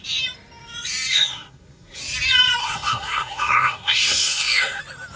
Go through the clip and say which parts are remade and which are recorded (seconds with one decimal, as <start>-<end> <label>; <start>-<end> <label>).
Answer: 0.0-1.1 recorded; 1.1-2.0 remade; 2.0-2.6 recorded; 2.6-4.8 remade; 4.8-5.2 recorded